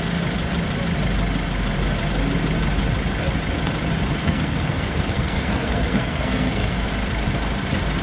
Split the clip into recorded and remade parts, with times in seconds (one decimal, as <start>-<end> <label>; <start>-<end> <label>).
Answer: 0.0-4.2 recorded; 4.2-6.9 remade; 6.9-8.0 recorded